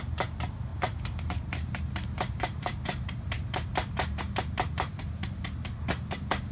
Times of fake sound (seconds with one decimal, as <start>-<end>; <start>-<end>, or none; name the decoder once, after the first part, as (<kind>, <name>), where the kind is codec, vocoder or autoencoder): 0.7-4.2 (vocoder, BigVGAN v2)